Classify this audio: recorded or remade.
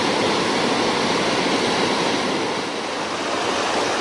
recorded